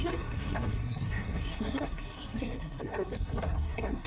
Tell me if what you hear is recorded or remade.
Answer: remade